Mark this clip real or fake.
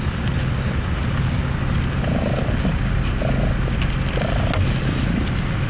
real